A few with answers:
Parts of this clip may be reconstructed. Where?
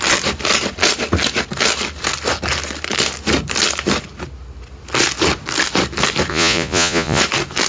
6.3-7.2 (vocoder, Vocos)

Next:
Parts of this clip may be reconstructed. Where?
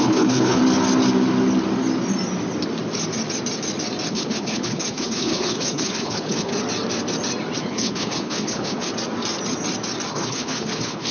0.0-0.6 (codec, HILCodec); 4.1-6.5; 7.6-8.9; 10.1-11.1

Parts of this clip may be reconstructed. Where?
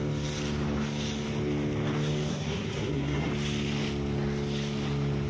2.3-3.3 (codec, SNAC)